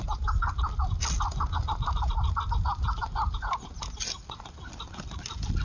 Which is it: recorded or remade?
recorded